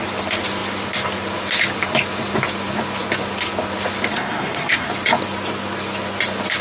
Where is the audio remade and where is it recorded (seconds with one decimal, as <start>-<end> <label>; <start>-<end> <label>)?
0.0-4.1 recorded; 4.1-4.9 remade; 4.9-6.6 recorded